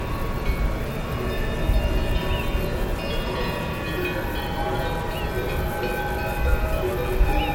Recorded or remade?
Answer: recorded